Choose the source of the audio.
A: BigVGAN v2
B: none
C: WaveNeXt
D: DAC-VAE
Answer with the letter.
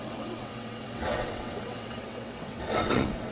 C